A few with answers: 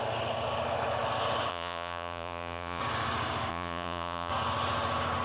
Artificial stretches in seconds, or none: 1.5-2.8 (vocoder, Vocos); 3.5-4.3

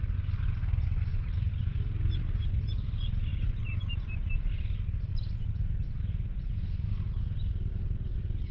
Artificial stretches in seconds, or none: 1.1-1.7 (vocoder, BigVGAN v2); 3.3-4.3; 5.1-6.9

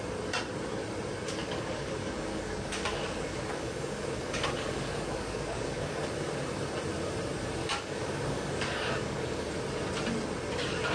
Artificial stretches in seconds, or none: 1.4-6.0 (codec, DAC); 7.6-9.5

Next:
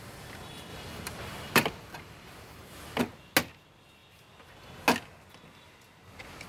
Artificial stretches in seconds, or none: 0.7-3.0 (vocoder, BigVGAN v2)